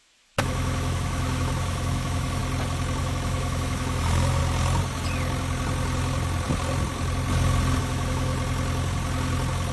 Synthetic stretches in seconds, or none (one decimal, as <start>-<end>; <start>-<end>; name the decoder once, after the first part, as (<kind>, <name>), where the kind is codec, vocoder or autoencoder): 0.0-2.4 (autoencoder, DAC-VAE); 3.0-4.4; 7.8-8.3